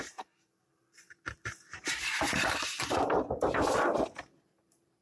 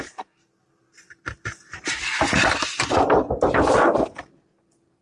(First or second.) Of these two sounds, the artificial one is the first